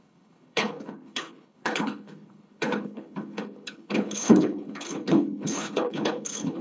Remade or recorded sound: remade